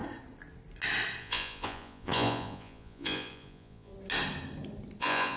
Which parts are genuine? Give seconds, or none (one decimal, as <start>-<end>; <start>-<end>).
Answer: 0.0-1.2; 3.9-5.0